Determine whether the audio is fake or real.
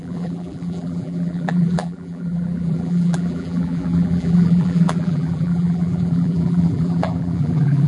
fake